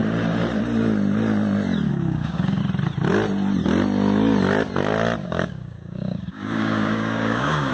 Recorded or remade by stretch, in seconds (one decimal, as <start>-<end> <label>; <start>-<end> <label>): 0.0-1.9 recorded; 1.9-2.6 remade; 2.6-5.2 recorded; 5.2-7.7 remade